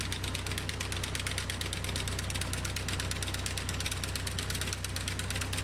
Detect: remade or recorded recorded